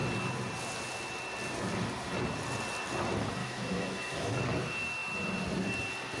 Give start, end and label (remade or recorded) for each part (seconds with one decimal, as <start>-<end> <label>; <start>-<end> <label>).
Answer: 0.0-3.4 recorded; 3.4-4.4 remade; 4.4-6.2 recorded